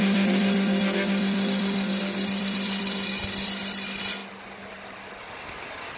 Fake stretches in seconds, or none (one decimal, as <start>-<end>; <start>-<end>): none